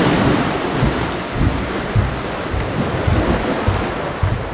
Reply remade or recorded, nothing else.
recorded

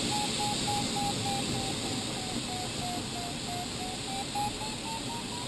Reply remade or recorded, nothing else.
recorded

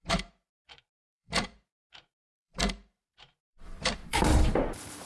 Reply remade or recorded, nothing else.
remade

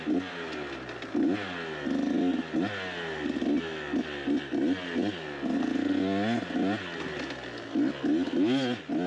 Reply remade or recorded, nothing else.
recorded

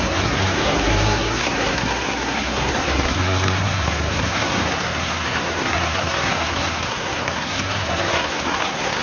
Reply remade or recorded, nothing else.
remade